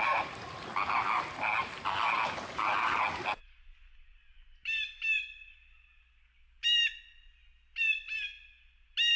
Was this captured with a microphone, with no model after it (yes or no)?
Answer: yes